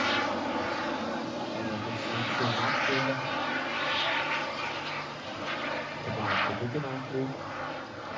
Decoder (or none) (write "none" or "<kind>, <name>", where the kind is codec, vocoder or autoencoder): none